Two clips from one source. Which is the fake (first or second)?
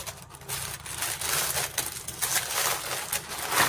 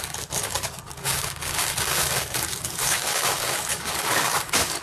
second